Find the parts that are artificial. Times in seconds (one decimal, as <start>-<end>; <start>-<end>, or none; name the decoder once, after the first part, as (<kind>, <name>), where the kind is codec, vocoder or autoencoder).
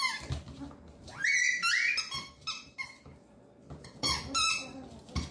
none